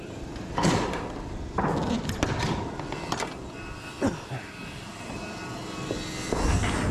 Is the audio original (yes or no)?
yes